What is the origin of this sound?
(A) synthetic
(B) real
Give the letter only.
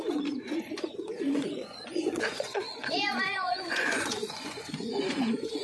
A